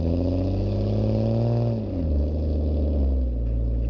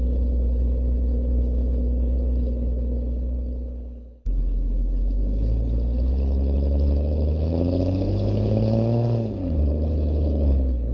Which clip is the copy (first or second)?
second